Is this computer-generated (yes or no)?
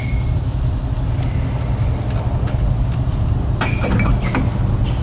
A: no